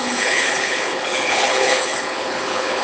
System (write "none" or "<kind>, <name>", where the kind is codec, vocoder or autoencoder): codec, HILCodec